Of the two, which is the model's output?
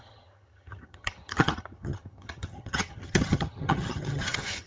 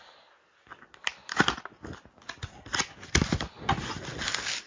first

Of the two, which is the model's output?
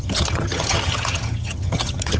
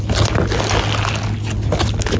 first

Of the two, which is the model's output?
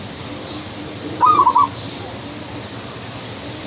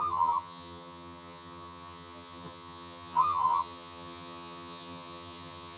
second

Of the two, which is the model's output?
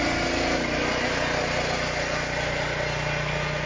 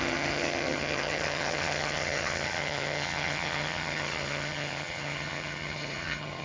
second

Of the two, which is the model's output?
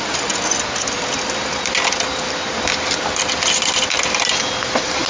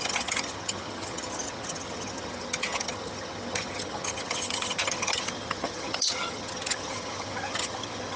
second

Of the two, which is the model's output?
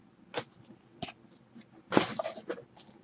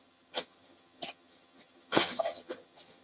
second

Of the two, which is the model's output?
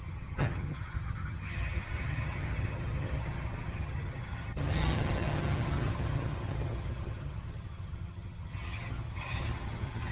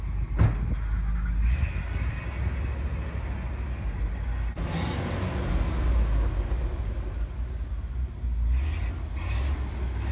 first